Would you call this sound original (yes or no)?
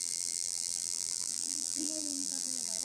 no